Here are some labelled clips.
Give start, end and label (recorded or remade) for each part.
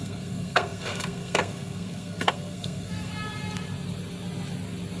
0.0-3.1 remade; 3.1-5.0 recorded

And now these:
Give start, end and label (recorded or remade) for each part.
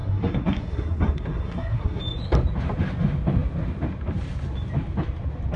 0.0-2.0 remade; 2.0-5.6 recorded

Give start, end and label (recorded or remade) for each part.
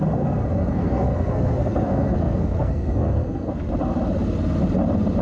0.0-0.6 recorded; 0.6-3.5 remade; 3.5-5.2 recorded